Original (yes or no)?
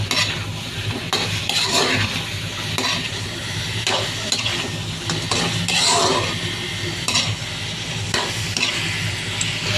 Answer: yes